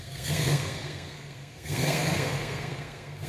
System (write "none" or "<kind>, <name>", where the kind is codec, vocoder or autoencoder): codec, SNAC